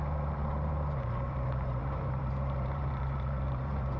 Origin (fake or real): fake